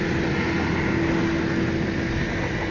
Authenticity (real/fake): real